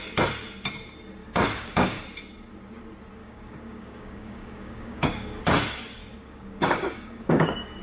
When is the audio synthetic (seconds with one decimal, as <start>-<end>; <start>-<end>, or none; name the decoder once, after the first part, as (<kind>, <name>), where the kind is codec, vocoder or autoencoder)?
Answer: 1.2-2.0 (codec, DAC); 3.2-5.4; 6.0-7.8